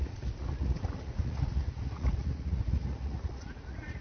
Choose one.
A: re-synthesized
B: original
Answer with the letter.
A